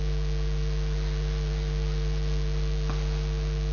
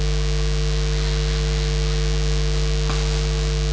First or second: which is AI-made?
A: first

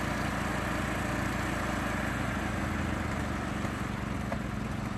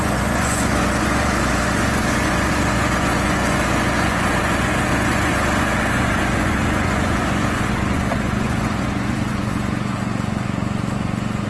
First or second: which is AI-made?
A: second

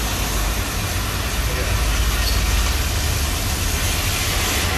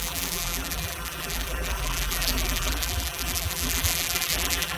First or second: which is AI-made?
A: second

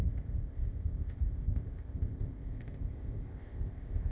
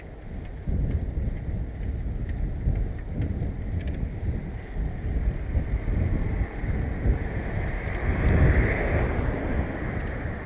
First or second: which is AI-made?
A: first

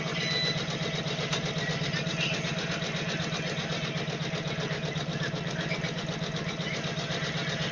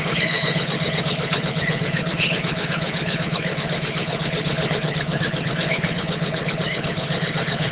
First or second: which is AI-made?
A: second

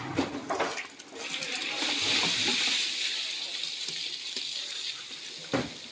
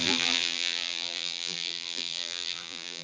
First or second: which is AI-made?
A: second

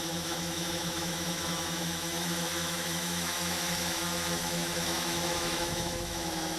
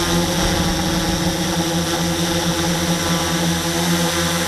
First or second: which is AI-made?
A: first